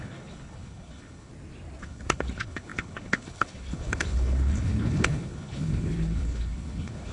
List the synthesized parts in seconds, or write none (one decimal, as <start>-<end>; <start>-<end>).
0.0-1.3; 1.8-7.1